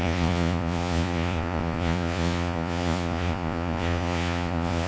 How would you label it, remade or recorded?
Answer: remade